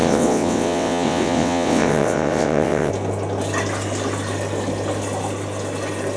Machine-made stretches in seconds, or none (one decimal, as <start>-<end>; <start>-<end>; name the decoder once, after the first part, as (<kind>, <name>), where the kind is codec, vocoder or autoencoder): 0.0-2.9 (vocoder, WaveNeXt)

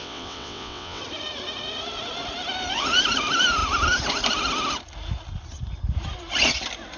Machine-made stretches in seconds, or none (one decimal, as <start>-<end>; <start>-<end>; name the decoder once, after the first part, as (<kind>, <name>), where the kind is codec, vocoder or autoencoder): 0.0-1.0 (vocoder, WaveNeXt)

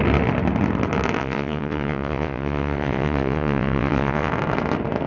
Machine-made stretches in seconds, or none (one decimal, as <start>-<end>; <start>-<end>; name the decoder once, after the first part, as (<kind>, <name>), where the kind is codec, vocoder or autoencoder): 1.2-4.3 (vocoder, WaveNeXt)

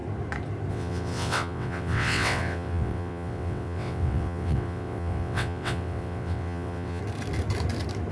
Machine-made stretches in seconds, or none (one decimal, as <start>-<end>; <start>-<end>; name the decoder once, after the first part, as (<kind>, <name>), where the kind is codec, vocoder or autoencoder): 0.7-7.0 (vocoder, WaveNeXt)

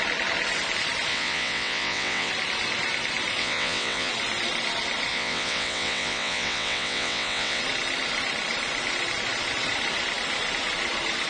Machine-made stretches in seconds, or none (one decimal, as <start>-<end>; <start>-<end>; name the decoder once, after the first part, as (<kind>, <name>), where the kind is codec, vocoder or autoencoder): 1.1-2.3 (vocoder, WaveNeXt); 3.4-4.1; 5.1-7.6

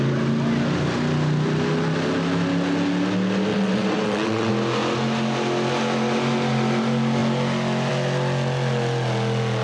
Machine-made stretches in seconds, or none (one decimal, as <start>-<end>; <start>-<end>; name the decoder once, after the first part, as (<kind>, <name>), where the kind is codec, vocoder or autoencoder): 3.5-4.5 (vocoder, WaveNeXt)